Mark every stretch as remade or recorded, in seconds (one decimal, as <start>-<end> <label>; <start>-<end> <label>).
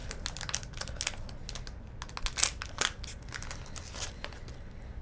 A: 0.0-5.0 recorded